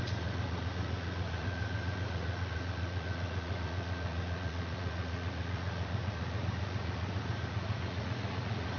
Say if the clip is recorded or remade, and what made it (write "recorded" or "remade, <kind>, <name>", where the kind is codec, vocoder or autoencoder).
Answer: remade, vocoder, Vocos